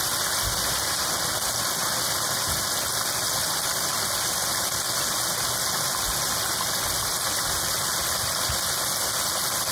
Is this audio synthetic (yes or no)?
no